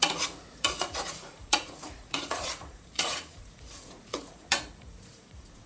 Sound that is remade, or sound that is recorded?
remade